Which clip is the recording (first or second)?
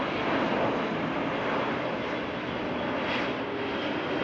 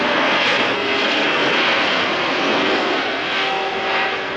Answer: first